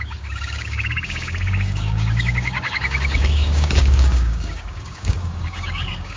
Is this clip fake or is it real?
fake